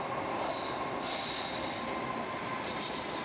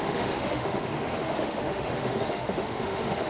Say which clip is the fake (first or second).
second